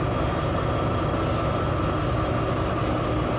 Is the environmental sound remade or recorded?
recorded